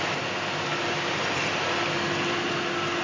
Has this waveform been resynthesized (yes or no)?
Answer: no